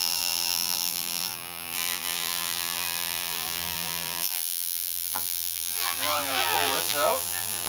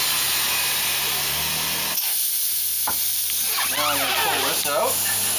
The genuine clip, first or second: second